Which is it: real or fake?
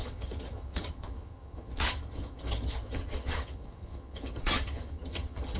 fake